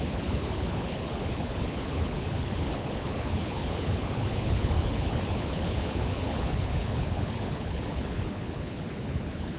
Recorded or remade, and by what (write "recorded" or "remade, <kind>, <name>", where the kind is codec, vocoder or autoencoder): remade, codec, HILCodec